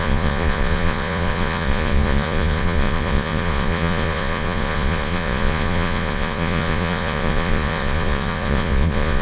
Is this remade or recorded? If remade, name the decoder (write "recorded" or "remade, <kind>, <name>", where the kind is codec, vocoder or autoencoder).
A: remade, vocoder, Vocos